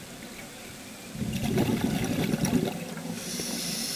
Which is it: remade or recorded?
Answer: recorded